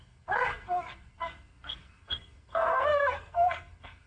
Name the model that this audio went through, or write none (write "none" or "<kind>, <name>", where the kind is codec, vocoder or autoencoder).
codec, SNAC